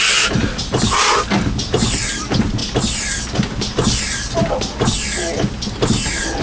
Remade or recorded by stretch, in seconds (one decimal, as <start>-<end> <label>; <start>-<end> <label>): 0.0-6.4 recorded

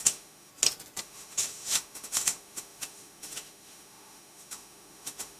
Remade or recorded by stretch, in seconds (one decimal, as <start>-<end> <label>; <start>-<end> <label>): 0.0-0.5 remade; 0.5-1.0 recorded; 1.0-5.4 remade

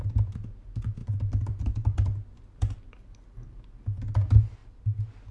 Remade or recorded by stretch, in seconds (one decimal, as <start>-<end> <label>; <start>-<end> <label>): 0.0-1.0 recorded; 1.0-2.8 remade; 2.8-4.6 recorded; 4.6-5.3 remade

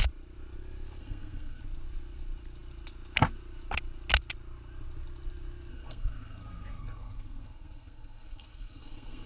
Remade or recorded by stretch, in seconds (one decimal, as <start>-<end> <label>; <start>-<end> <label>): 0.0-1.0 recorded; 1.0-1.6 remade; 1.6-5.7 recorded; 5.7-9.3 remade

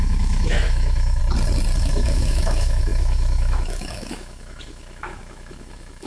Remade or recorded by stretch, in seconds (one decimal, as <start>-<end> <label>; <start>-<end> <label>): 0.0-1.2 remade; 1.2-1.8 recorded; 1.8-6.1 remade

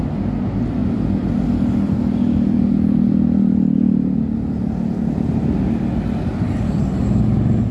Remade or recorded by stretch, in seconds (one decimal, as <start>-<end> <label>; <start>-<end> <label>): 0.0-6.3 recorded; 6.3-6.9 remade; 6.9-7.7 recorded

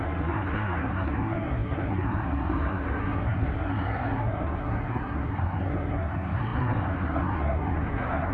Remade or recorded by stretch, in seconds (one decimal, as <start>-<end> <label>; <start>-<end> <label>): 0.0-8.3 remade

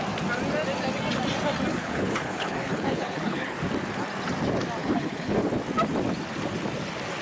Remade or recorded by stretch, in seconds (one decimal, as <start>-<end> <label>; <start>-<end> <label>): 0.0-1.7 recorded; 1.7-3.6 remade; 3.6-4.8 recorded; 4.8-5.5 remade; 5.5-7.2 recorded